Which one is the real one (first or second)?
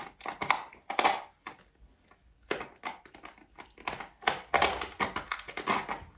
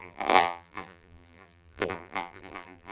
first